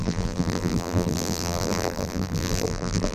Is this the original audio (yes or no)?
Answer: no